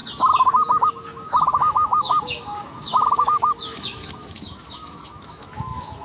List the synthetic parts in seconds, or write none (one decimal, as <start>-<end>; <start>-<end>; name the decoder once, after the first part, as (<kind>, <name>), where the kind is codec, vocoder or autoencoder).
0.8-6.0 (autoencoder, DAC-VAE)